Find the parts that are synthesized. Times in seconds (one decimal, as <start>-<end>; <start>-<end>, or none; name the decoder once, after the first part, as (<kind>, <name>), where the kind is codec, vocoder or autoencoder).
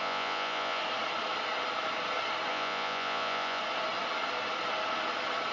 0.0-0.8 (vocoder, Vocos); 2.5-3.6